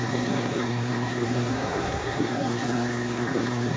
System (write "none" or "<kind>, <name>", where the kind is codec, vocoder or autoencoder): codec, SNAC